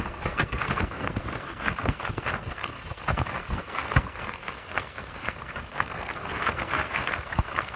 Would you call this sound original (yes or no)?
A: no